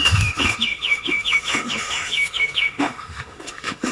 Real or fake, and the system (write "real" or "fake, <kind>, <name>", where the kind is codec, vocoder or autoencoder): fake, autoencoder, DAC-VAE